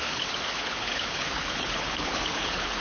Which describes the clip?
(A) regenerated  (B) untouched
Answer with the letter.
A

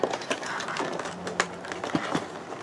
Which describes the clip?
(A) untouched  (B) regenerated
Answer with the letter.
A